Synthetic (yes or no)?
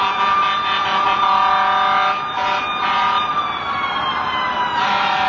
no